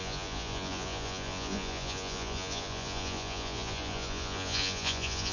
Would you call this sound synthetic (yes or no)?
yes